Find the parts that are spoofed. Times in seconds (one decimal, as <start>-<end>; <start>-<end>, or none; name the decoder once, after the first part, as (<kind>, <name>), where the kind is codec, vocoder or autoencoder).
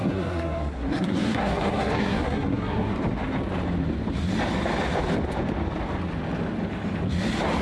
0.0-2.9 (codec, SNAC)